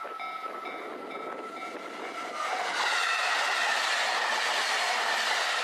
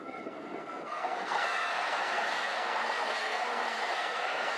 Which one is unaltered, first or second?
first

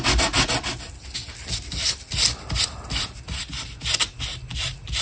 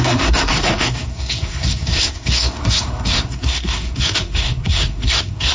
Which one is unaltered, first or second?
first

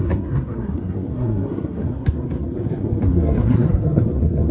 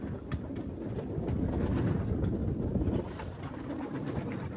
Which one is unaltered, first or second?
second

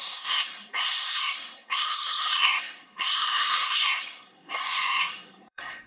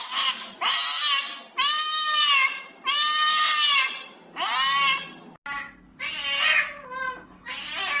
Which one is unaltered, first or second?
second